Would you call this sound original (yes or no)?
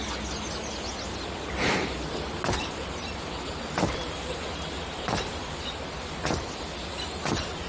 yes